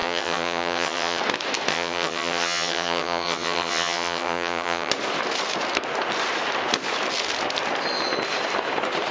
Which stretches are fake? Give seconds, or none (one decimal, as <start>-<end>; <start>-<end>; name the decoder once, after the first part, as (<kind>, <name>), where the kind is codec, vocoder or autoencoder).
0.0-1.2 (vocoder, HiFi-GAN); 1.7-4.9